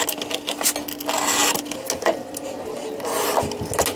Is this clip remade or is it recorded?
recorded